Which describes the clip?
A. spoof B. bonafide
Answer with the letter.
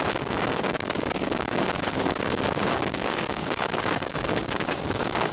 A